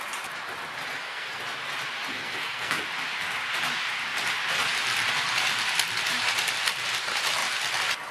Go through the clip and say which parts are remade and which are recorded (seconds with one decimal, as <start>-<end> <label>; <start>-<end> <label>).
0.0-0.9 recorded; 0.9-1.4 remade; 1.4-2.1 recorded; 2.1-2.8 remade; 2.8-8.1 recorded